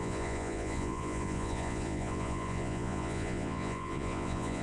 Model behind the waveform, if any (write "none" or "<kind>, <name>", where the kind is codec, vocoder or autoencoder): vocoder, Vocos